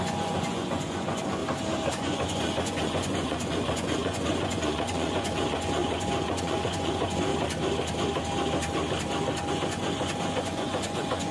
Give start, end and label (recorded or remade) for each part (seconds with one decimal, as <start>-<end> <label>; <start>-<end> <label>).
0.0-1.4 remade; 1.4-1.9 recorded; 1.9-7.3 remade; 7.3-9.5 recorded; 9.5-11.3 remade

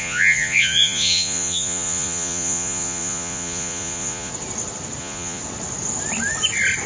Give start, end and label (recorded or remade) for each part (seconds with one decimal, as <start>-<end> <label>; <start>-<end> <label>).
0.0-4.3 remade; 4.3-5.0 recorded; 5.0-5.4 remade; 5.4-6.9 recorded